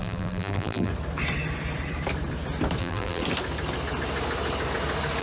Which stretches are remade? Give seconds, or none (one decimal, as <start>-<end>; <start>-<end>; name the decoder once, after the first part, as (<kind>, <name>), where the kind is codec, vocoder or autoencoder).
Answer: 0.0-0.9 (vocoder, BigVGAN v2); 2.8-3.2